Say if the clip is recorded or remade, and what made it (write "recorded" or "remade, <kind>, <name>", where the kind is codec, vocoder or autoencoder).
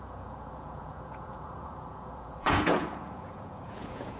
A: remade, vocoder, Vocos